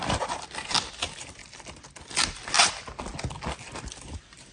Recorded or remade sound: remade